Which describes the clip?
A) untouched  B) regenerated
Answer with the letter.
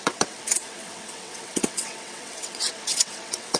B